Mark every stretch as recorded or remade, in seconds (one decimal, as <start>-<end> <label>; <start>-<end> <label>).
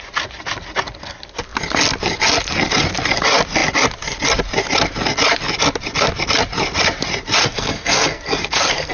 0.0-7.4 recorded; 7.4-8.9 remade